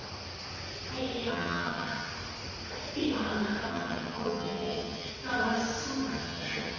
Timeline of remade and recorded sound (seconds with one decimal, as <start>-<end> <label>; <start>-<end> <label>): 0.0-1.3 recorded; 1.3-2.1 remade; 2.1-3.7 recorded; 3.7-5.1 remade; 5.1-6.1 recorded; 6.1-6.8 remade